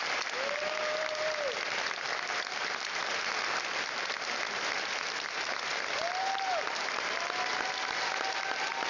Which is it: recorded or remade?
recorded